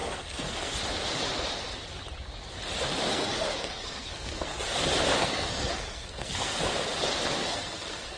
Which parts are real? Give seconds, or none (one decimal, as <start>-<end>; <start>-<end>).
0.8-3.1; 4.7-5.2; 6.6-7.4